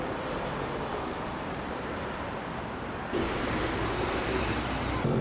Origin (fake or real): fake